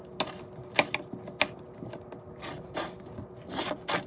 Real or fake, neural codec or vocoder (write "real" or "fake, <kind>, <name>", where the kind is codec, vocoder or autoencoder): real